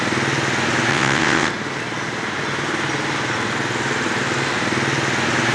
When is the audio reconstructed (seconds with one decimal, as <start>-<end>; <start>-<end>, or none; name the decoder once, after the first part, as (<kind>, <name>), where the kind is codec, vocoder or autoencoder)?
0.9-1.5 (vocoder, WaveNeXt)